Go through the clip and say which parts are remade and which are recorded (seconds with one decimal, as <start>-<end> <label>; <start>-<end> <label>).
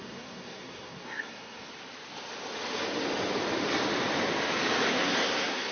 0.0-1.7 remade; 1.7-4.9 recorded; 4.9-5.7 remade